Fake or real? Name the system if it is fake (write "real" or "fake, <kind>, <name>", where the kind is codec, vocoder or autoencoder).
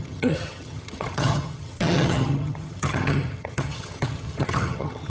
fake, vocoder, HiFi-GAN